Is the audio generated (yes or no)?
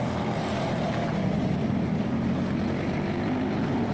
no